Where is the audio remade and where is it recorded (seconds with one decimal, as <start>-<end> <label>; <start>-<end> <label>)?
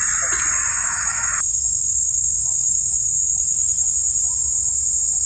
0.0-0.7 recorded; 0.7-3.9 remade; 3.9-5.3 recorded